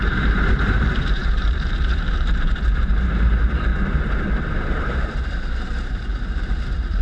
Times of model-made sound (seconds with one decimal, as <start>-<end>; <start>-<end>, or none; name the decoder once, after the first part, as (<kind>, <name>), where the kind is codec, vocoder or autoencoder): 0.0-3.7 (vocoder, BigVGAN v2); 4.6-7.0